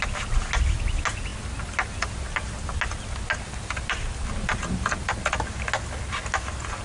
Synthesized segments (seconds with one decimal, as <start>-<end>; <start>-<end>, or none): none